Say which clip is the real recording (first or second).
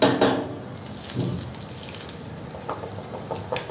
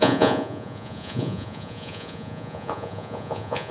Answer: first